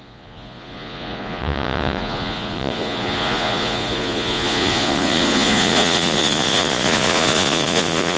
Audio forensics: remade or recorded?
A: remade